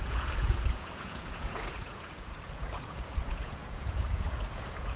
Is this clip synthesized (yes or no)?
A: yes